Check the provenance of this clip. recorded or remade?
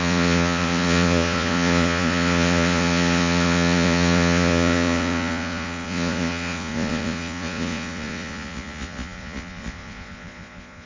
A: remade